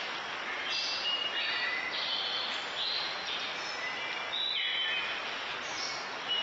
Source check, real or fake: real